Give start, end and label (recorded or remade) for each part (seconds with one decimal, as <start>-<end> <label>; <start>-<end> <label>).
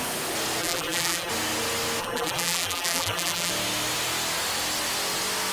0.0-0.6 recorded; 0.6-1.3 remade; 1.3-2.0 recorded; 2.0-3.5 remade; 3.5-5.5 recorded